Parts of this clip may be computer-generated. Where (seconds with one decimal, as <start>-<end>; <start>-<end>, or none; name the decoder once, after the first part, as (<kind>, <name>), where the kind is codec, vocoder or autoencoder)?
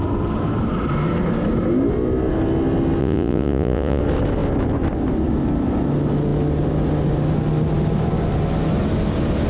3.0-4.0 (vocoder, Vocos)